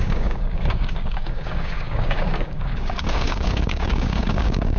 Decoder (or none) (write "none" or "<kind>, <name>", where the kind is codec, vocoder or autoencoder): codec, DAC